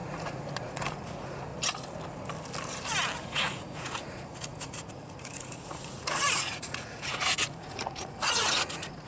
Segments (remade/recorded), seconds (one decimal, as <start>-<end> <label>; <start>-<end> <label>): 0.0-1.5 remade; 1.5-3.2 recorded; 3.2-9.1 remade